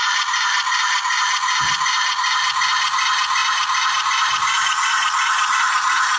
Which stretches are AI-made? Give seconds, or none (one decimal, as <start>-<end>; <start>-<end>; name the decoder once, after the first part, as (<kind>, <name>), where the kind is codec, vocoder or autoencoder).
none